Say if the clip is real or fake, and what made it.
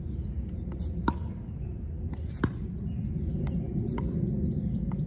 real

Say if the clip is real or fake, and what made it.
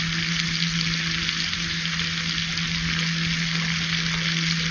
real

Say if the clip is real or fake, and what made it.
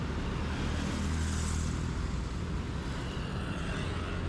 real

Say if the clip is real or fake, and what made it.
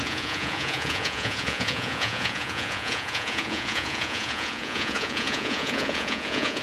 fake, vocoder, Vocos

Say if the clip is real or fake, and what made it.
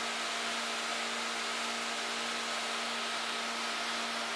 real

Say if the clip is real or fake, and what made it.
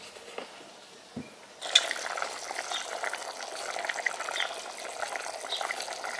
real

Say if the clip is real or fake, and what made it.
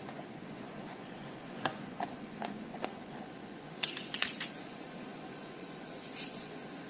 fake, vocoder, Vocos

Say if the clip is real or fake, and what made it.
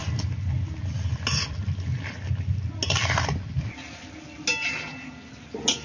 real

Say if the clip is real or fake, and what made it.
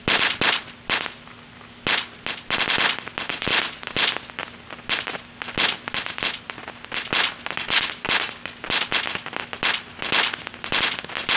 real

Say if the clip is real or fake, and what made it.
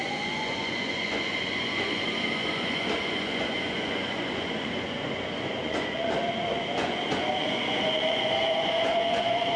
fake, vocoder, Vocos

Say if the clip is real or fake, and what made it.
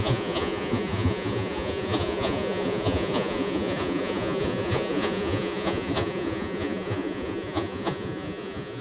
fake, vocoder, Vocos